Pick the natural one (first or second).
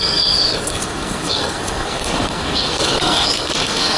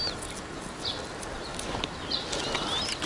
second